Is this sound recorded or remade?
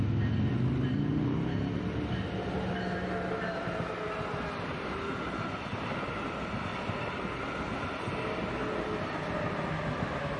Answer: recorded